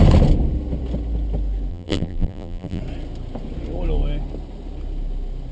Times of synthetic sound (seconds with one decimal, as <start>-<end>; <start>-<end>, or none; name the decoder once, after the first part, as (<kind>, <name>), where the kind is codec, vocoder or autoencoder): 1.7-2.8 (vocoder, BigVGAN v2)